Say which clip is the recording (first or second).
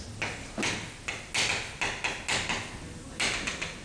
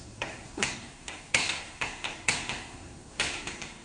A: first